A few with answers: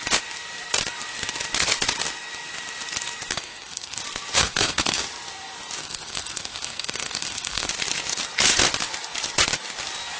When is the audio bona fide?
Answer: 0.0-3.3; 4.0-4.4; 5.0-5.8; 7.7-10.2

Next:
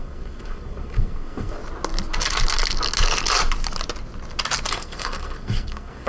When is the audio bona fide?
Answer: 1.6-4.7

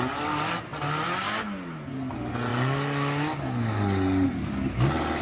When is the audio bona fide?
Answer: 0.0-5.2

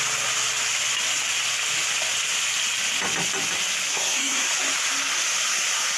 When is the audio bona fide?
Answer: 0.0-3.9; 4.5-6.0

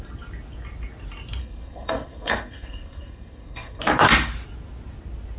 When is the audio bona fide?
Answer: 0.0-1.4; 3.8-5.4

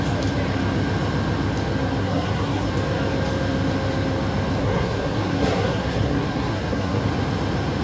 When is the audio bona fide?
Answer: 0.0-2.0; 2.7-4.6; 7.0-7.8

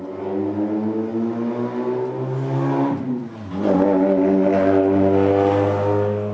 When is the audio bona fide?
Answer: 0.0-6.3